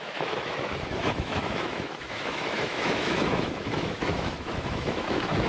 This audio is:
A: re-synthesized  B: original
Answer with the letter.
A